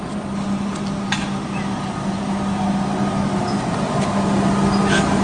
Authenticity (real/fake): real